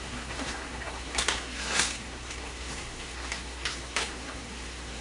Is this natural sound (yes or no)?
no